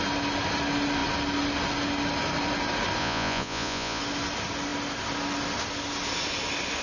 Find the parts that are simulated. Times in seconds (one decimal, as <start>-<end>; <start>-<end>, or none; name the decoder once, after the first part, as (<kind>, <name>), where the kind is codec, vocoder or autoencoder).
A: 3.0-4.0 (vocoder, Vocos)